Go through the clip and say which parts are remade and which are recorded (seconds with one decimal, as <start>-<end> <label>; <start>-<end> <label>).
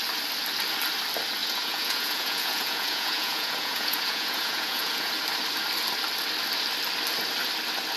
0.0-1.4 recorded; 1.4-5.1 remade; 5.1-8.0 recorded